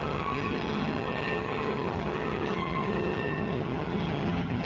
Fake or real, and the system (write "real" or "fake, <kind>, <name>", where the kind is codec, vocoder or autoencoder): fake, vocoder, HiFi-GAN